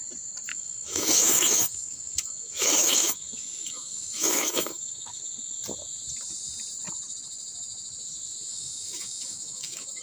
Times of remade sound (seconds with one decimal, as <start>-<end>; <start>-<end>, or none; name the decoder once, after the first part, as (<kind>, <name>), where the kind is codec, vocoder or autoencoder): 0.5-5.2 (autoencoder, DAC-VAE); 8.5-10.0